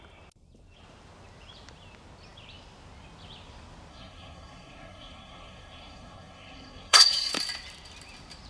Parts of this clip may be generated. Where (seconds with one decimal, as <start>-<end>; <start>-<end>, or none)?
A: 3.9-7.3